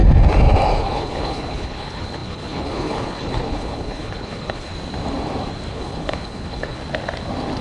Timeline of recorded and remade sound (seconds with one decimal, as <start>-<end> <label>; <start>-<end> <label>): 0.0-0.8 recorded; 0.8-4.7 remade; 4.7-5.7 recorded; 5.7-6.8 remade; 6.8-7.6 recorded

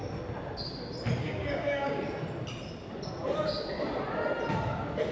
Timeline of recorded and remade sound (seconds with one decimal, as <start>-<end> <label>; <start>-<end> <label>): 0.0-1.2 recorded; 1.2-2.0 remade; 2.0-5.1 recorded

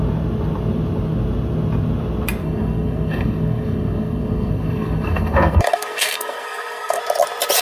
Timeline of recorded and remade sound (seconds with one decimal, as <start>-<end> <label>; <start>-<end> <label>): 0.0-2.4 recorded; 2.4-7.0 remade; 7.0-7.6 recorded

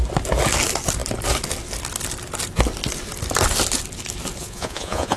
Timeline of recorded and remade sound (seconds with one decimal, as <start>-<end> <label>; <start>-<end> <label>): 0.0-4.4 recorded; 4.4-5.2 remade

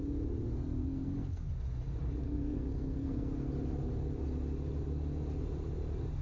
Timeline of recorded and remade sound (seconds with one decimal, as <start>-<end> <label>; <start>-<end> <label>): 0.0-0.8 recorded; 0.8-1.5 remade; 1.5-2.2 recorded; 2.2-3.5 remade; 3.5-6.2 recorded

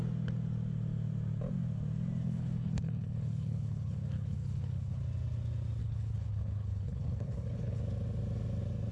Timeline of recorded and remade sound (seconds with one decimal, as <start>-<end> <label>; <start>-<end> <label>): 0.0-2.2 recorded; 2.2-5.0 remade; 5.0-5.8 recorded; 5.8-7.8 remade; 7.8-8.9 recorded